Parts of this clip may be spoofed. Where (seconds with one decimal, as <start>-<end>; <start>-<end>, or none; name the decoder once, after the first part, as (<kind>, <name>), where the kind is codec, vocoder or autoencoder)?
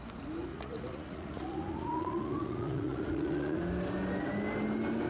0.5-3.6 (vocoder, Vocos)